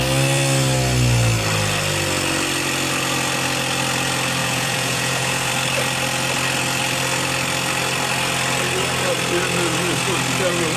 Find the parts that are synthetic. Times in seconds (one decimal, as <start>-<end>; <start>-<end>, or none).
4.4-5.5

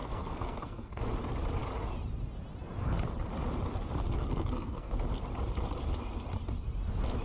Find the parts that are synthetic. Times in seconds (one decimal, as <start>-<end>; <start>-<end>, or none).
0.0-1.0; 4.0-4.9

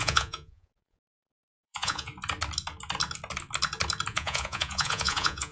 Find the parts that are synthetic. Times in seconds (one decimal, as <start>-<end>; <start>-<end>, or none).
0.0-2.1; 4.1-5.5

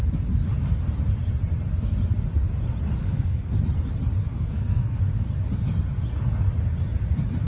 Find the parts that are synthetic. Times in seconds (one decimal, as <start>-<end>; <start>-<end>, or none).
3.0-3.6; 4.2-5.0

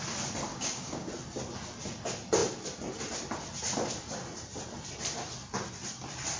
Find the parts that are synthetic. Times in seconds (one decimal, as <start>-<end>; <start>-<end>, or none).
0.5-1.1

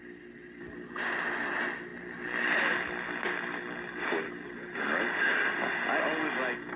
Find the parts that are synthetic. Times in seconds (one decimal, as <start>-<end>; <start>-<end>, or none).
none